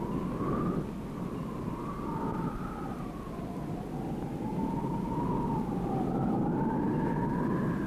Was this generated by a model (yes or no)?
no